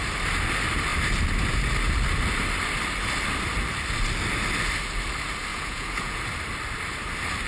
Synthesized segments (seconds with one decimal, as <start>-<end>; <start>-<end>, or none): 5.5-6.2